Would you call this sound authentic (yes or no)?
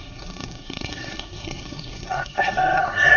no